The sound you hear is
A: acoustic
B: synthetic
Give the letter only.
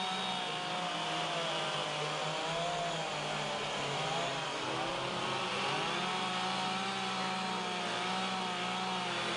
A